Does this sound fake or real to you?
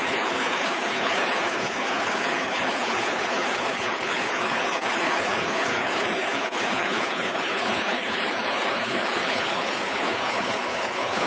fake